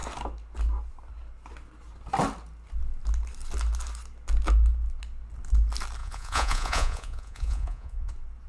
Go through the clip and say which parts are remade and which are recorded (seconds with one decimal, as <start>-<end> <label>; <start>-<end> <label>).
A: 0.0-6.0 recorded; 6.0-8.1 remade; 8.1-8.5 recorded